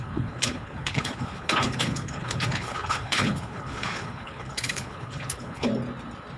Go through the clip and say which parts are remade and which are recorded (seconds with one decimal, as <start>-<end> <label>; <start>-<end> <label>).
0.0-5.7 remade; 5.7-6.4 recorded